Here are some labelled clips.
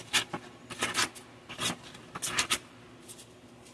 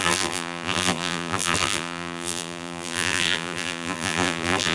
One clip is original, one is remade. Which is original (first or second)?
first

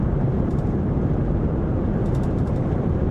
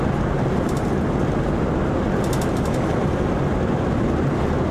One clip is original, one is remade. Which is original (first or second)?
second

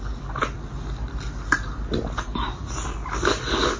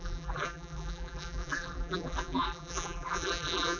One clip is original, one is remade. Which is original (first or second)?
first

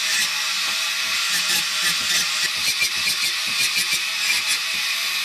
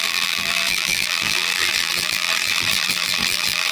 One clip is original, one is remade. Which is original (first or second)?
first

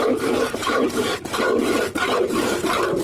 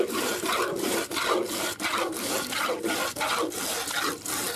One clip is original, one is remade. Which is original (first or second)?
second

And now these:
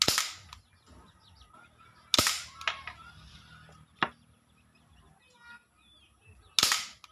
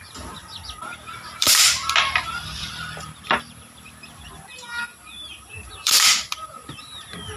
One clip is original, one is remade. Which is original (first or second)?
first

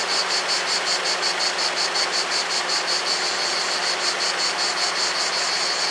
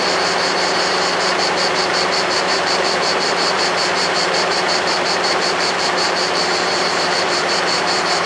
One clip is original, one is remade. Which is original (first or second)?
first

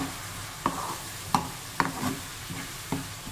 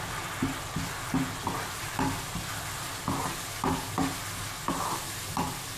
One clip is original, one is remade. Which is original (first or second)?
second